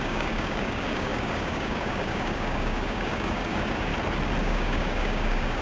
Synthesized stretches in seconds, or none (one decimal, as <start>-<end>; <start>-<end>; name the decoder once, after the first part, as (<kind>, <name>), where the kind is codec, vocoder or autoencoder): 0.0-3.9 (codec, DAC); 4.4-5.6